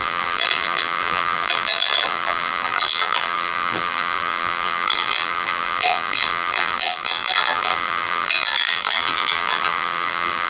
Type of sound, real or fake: fake